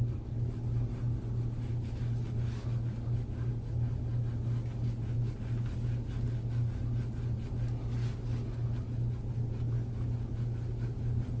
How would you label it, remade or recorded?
recorded